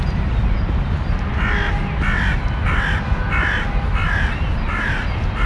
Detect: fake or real real